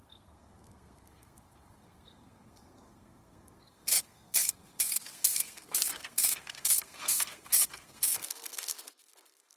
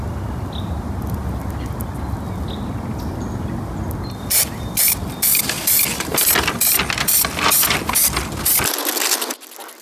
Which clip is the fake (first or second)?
first